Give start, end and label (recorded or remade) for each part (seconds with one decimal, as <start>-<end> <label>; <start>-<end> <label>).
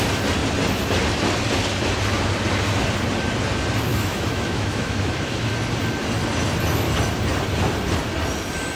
0.0-3.9 recorded; 3.9-5.5 remade; 5.5-8.8 recorded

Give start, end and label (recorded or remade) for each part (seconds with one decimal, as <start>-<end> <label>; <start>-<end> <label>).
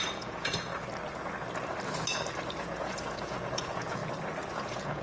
0.0-0.7 remade; 0.7-2.6 recorded; 2.6-4.0 remade; 4.0-4.5 recorded; 4.5-5.0 remade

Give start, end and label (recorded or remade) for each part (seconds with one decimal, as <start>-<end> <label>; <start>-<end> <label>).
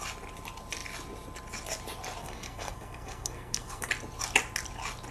0.0-2.2 recorded; 2.2-3.9 remade; 3.9-5.1 recorded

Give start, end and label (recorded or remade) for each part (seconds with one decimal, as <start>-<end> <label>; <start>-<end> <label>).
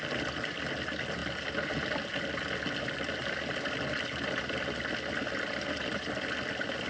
0.0-6.9 recorded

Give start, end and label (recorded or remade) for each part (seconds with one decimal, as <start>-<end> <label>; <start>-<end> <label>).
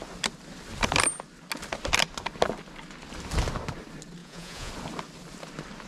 0.0-4.2 recorded; 4.2-4.7 remade; 4.7-5.9 recorded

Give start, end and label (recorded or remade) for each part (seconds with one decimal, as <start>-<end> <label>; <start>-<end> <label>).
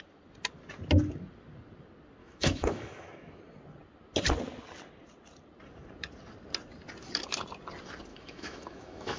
0.0-2.2 recorded; 2.2-3.4 remade; 3.4-8.1 recorded; 8.1-9.2 remade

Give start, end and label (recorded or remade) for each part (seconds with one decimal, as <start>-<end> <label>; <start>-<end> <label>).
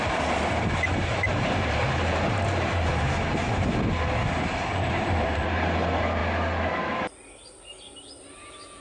0.0-0.9 recorded; 0.9-3.8 remade; 3.8-8.8 recorded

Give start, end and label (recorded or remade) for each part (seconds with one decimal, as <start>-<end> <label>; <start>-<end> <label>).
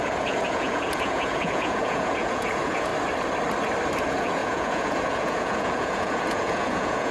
0.0-2.9 remade; 2.9-4.0 recorded; 4.0-7.1 remade